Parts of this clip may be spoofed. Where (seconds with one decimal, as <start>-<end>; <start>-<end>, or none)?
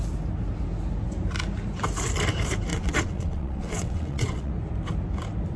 2.7-4.5